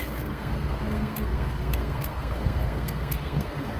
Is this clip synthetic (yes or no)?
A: yes